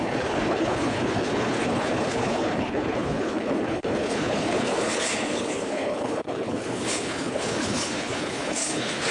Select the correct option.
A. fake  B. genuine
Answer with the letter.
A